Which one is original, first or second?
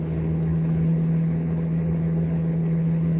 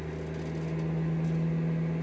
second